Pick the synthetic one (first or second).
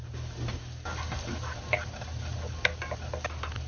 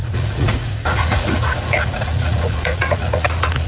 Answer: second